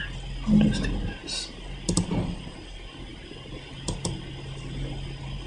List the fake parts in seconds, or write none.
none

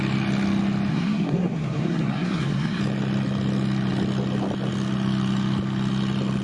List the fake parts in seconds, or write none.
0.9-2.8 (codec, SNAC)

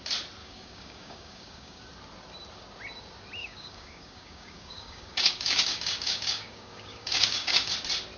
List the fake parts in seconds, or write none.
0.4-1.8 (codec, DAC); 3.4-7.7